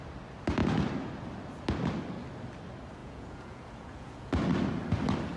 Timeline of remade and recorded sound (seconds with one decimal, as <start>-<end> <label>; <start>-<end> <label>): 0.0-3.0 recorded; 3.0-4.3 remade; 4.3-5.4 recorded